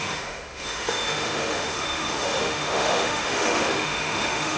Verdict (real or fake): fake